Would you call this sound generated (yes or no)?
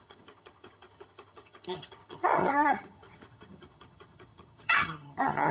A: yes